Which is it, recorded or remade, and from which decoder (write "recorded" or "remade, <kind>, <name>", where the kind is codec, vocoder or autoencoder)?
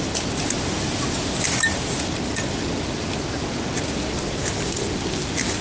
recorded